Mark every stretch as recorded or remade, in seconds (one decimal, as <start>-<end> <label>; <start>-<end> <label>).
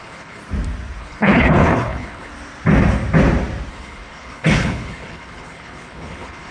0.0-0.4 remade; 0.4-1.0 recorded; 1.0-2.3 remade; 2.3-3.7 recorded; 3.7-6.5 remade